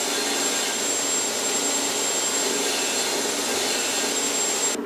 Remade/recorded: recorded